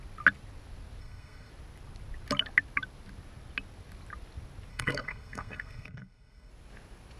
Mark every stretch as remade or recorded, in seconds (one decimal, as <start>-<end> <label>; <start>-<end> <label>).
0.0-1.0 recorded; 1.0-1.5 remade; 1.5-4.7 recorded; 4.7-6.5 remade; 6.5-7.2 recorded